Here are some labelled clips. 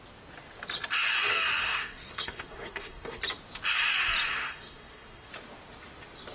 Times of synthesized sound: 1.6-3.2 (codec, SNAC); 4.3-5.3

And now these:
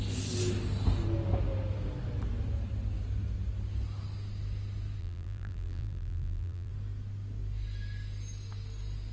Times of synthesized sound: 5.0-6.7 (vocoder, BigVGAN v2)

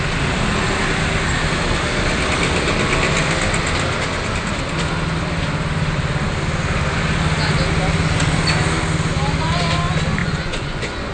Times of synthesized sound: 10.2-11.1 (vocoder, Vocos)

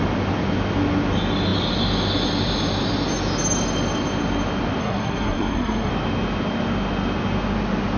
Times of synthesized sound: 4.8-5.9 (codec, SNAC)

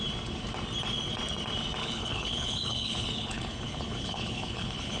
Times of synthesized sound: 1.8-5.0 (codec, HILCodec)

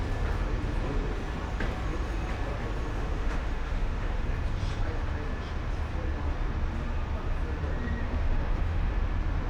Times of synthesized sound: 2.9-4.2 (autoencoder, DAC-VAE); 8.0-8.9